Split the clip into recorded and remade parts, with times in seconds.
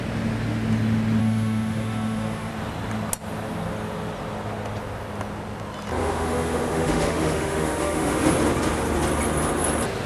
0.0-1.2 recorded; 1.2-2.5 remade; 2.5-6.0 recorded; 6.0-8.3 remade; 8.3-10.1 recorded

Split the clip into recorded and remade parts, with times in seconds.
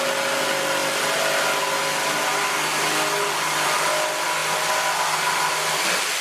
0.0-6.2 recorded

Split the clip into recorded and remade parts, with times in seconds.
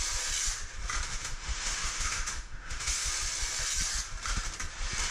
0.0-1.1 recorded; 1.1-3.1 remade; 3.1-5.1 recorded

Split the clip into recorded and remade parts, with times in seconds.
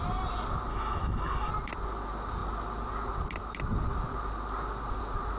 0.0-0.7 recorded; 0.7-1.5 remade; 1.5-5.4 recorded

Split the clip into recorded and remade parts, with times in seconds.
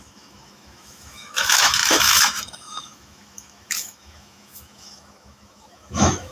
0.0-6.3 remade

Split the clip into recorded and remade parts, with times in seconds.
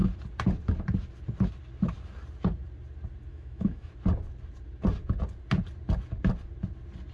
0.0-3.3 recorded; 3.3-3.9 remade; 3.9-7.1 recorded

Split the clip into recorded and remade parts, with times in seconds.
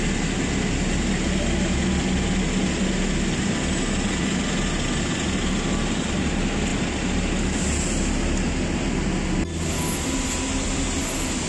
0.0-11.5 recorded